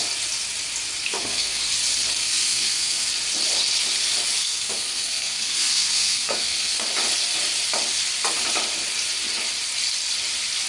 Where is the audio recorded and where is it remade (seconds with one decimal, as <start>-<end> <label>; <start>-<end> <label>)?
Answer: 0.0-1.1 recorded; 1.1-1.6 remade; 1.6-2.2 recorded; 2.2-3.1 remade; 3.1-4.4 recorded; 4.4-6.8 remade; 6.8-10.7 recorded